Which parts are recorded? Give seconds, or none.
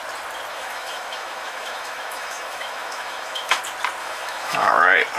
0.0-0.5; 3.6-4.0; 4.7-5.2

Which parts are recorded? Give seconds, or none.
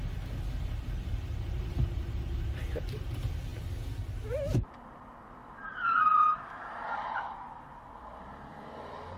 3.5-4.3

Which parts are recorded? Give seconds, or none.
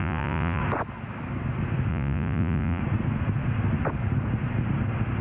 0.6-1.9; 2.8-5.2